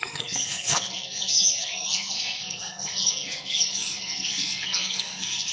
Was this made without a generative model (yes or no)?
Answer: no